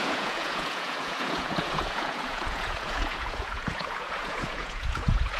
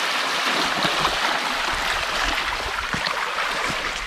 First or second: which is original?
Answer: second